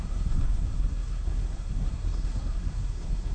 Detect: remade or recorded remade